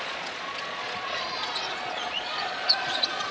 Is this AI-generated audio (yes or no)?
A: yes